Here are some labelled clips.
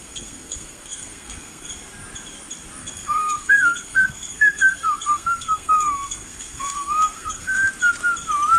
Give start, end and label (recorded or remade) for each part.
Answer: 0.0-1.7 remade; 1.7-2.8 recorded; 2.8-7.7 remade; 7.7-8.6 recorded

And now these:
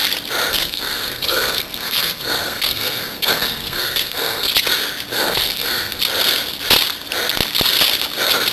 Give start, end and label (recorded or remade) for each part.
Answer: 0.0-0.5 recorded; 0.5-4.5 remade; 4.5-5.1 recorded; 5.1-6.0 remade; 6.0-8.5 recorded

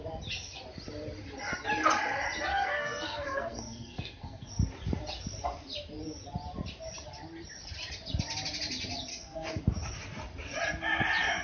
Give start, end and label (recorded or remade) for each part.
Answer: 0.0-2.5 recorded; 2.5-4.5 remade; 4.5-9.1 recorded; 9.1-9.6 remade; 9.6-11.4 recorded

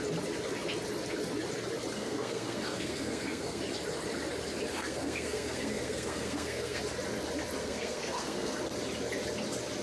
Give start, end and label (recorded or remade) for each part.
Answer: 0.0-2.0 recorded; 2.0-3.6 remade; 3.6-4.7 recorded; 4.7-6.8 remade; 6.8-7.6 recorded; 7.6-8.6 remade; 8.6-9.8 recorded

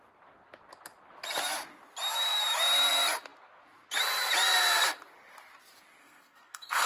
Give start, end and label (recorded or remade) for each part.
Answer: 0.0-6.0 recorded; 6.0-6.9 remade

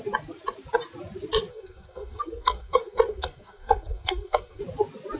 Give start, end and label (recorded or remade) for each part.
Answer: 0.0-1.5 recorded; 1.5-4.6 remade; 4.6-5.2 recorded

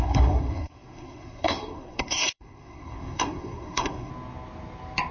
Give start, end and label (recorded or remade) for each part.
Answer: 0.0-4.1 remade; 4.1-5.1 recorded